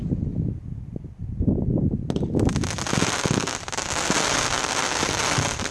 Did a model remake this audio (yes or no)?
no